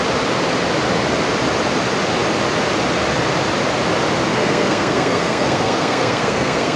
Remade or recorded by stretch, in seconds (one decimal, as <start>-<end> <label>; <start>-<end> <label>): 0.0-4.3 recorded; 4.3-6.8 remade

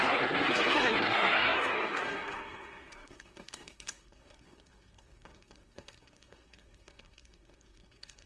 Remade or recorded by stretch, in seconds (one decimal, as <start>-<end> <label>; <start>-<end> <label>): 0.0-8.3 remade

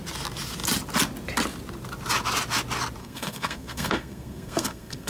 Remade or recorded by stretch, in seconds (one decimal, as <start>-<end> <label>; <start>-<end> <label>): 0.0-3.0 recorded; 3.0-5.1 remade

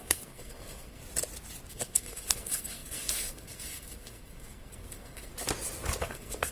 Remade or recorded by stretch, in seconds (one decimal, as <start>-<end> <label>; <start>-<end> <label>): 0.0-1.0 remade; 1.0-1.7 recorded; 1.7-5.3 remade; 5.3-6.0 recorded; 6.0-6.5 remade

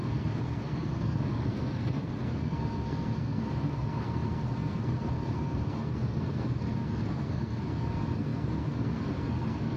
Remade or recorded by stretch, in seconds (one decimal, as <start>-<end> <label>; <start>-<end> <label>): 0.0-9.8 remade

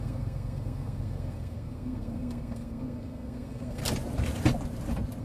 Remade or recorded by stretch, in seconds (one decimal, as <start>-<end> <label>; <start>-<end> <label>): 0.0-3.8 remade; 3.8-5.2 recorded

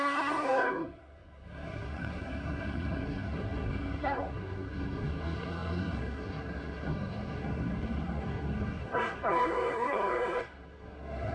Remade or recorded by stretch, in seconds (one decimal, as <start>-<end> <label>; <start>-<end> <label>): 0.0-11.3 remade

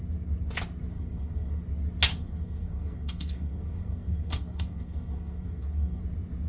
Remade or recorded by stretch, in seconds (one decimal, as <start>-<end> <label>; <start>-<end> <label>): 0.0-0.9 recorded; 0.9-1.6 remade; 1.6-2.1 recorded; 2.1-6.0 remade; 6.0-6.5 recorded